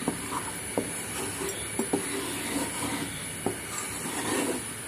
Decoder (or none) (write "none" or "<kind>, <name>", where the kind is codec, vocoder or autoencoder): none